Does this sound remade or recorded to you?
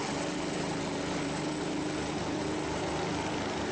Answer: recorded